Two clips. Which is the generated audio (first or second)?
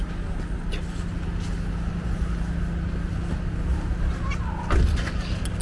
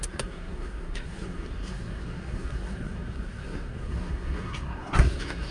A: second